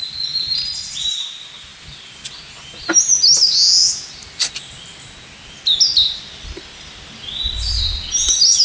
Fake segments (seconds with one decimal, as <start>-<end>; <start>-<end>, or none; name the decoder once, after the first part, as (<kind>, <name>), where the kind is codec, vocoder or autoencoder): none